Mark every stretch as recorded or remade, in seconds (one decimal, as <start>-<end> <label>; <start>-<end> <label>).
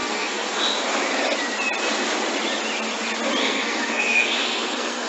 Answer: 0.0-0.6 remade; 0.6-3.4 recorded; 3.4-5.1 remade